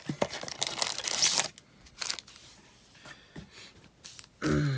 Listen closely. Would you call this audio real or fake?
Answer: real